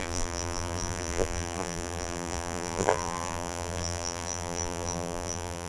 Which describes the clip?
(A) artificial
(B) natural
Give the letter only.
A